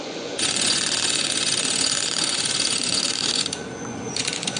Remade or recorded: remade